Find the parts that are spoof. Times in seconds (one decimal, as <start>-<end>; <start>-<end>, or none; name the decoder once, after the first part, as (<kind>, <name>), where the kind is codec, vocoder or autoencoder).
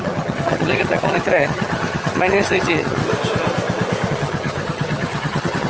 0.0-3.0 (vocoder, HiFi-GAN); 4.1-5.7